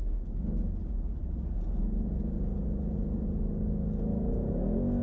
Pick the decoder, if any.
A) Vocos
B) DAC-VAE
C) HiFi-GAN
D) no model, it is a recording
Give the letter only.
D